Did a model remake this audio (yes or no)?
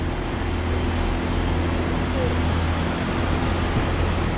no